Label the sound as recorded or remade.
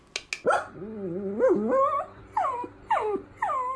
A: recorded